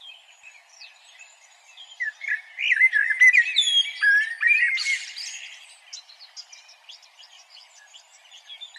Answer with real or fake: real